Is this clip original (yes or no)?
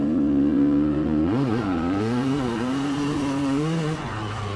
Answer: no